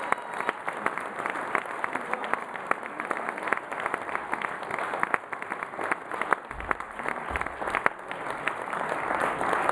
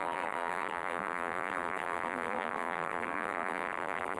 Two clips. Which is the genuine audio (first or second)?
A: first